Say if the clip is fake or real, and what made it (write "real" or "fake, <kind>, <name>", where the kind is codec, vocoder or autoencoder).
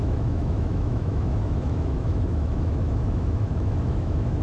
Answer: fake, autoencoder, DAC-VAE